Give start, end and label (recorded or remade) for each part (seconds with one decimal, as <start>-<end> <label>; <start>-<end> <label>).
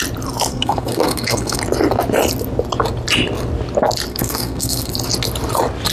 0.0-0.5 recorded; 0.5-1.6 remade; 1.6-4.1 recorded; 4.1-4.9 remade; 4.9-5.9 recorded